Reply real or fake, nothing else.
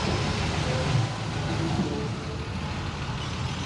real